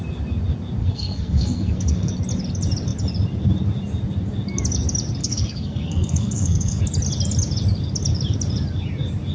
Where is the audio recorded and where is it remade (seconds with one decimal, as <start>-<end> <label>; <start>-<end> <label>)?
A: 0.0-0.8 recorded; 0.8-2.1 remade; 2.1-5.2 recorded; 5.2-6.8 remade; 6.8-9.3 recorded